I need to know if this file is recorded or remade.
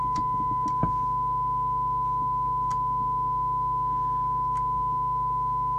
recorded